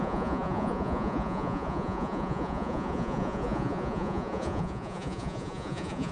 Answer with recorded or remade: remade